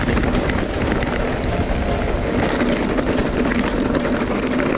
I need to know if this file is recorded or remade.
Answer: recorded